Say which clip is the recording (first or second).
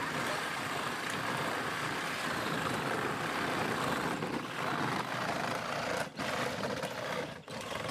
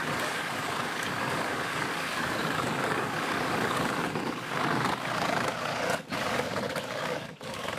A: first